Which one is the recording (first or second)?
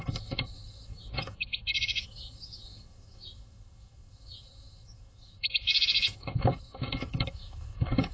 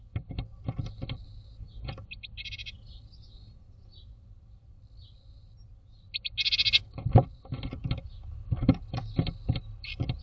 second